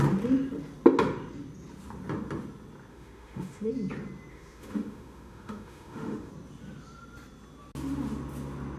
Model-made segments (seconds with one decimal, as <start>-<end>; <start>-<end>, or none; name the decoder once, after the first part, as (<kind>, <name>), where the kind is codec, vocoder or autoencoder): 2.9-3.7 (autoencoder, DAC-VAE); 4.3-6.3